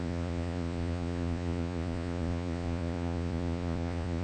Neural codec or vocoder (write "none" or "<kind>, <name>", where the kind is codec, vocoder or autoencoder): vocoder, Vocos